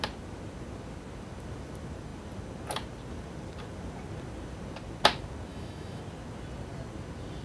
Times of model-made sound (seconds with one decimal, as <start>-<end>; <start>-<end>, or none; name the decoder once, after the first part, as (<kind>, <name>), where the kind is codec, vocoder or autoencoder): 5.5-6.0 (autoencoder, DAC-VAE)